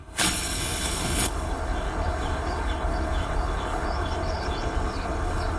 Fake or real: fake